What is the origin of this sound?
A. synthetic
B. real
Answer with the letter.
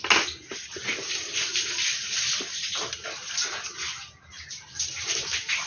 B